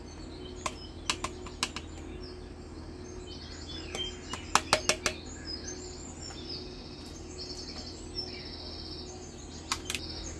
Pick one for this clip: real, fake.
real